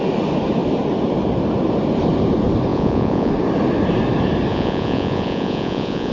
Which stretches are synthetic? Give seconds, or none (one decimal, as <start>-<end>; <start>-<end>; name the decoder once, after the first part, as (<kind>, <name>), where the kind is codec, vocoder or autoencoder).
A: 2.7-3.3 (vocoder, Vocos); 4.5-6.1